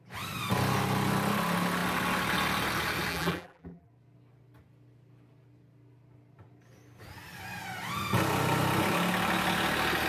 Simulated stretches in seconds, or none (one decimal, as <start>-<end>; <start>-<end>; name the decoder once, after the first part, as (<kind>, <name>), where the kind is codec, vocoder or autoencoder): 3.1-3.9 (vocoder, BigVGAN v2)